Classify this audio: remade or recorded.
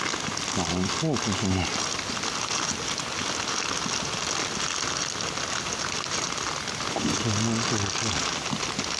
recorded